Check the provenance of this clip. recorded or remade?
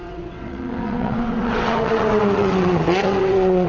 remade